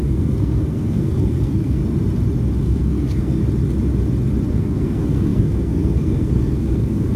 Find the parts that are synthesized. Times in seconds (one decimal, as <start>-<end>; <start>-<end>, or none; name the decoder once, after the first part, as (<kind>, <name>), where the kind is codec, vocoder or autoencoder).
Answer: 0.0-1.8 (codec, SNAC); 2.6-3.4; 4.5-7.2